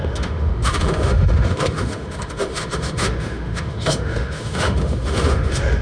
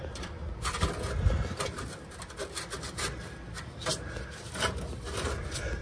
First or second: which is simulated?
first